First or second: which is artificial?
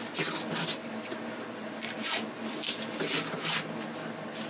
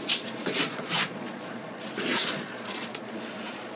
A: second